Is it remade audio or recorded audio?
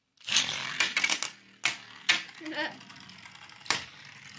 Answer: recorded